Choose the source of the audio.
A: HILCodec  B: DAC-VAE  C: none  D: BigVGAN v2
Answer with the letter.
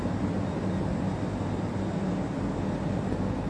C